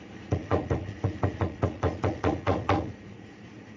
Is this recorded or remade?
remade